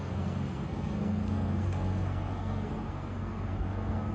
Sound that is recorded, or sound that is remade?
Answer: remade